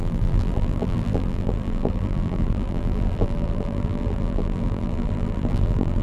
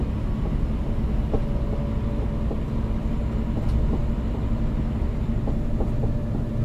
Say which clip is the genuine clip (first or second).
second